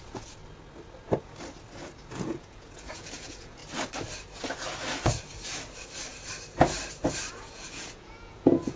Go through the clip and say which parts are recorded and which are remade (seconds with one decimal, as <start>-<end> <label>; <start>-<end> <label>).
0.0-0.4 remade; 0.4-2.0 recorded; 2.0-3.6 remade; 3.6-7.3 recorded; 7.3-8.8 remade